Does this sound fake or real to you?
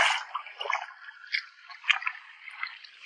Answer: real